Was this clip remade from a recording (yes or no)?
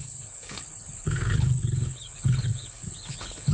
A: yes